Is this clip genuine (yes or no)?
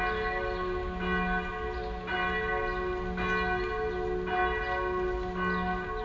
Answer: yes